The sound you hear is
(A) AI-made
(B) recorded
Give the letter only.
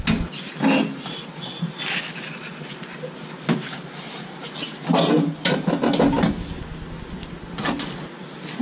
B